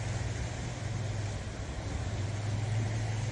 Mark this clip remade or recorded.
recorded